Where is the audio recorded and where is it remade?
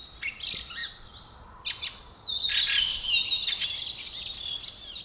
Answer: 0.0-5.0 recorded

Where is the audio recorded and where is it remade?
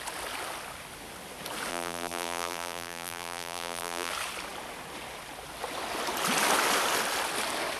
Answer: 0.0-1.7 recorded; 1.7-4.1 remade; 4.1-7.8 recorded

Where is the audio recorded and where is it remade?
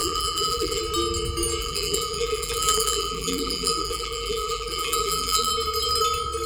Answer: 0.0-0.8 remade; 0.8-1.6 recorded; 1.6-5.5 remade; 5.5-6.5 recorded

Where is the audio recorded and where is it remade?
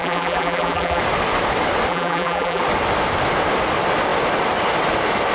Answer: 0.0-1.0 remade; 1.0-1.9 recorded; 1.9-2.6 remade; 2.6-5.3 recorded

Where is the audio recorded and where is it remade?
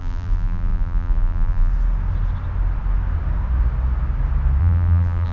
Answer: 0.0-1.7 remade; 1.7-4.6 recorded; 4.6-5.3 remade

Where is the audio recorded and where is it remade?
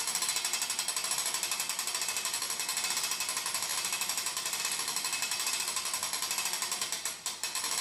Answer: 0.0-3.7 recorded; 3.7-4.6 remade; 4.6-7.8 recorded